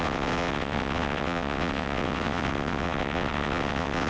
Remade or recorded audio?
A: remade